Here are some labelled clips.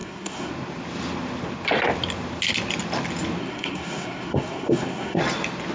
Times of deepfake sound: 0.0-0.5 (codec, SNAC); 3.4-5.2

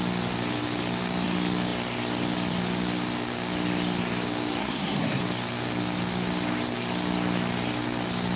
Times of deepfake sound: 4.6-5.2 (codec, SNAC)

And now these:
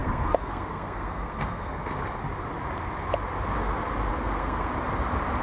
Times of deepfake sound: 0.0-2.0 (codec, SNAC); 4.1-4.7